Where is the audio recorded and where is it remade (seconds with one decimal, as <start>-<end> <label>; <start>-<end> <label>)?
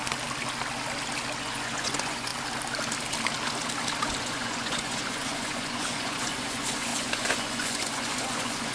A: 0.0-1.4 recorded; 1.4-2.3 remade; 2.3-4.2 recorded; 4.2-8.7 remade